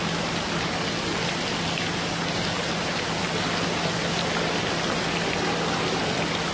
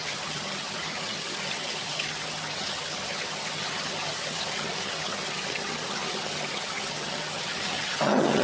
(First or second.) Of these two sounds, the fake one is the second